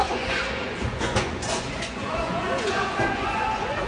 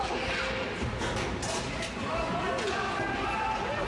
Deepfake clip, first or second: first